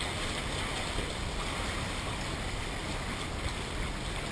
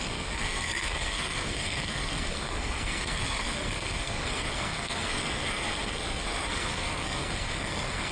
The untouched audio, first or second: first